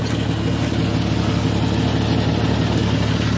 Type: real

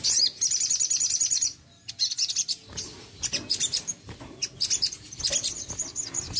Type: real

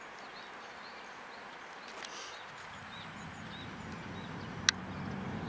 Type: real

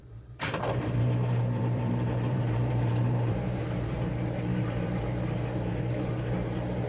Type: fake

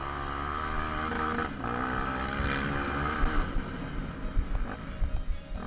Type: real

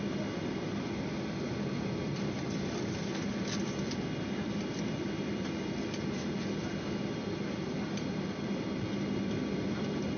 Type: real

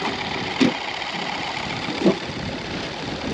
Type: real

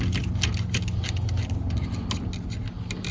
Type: real